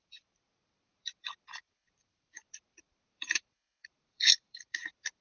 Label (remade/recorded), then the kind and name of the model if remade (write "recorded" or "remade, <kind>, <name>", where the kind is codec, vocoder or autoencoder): remade, vocoder, BigVGAN v2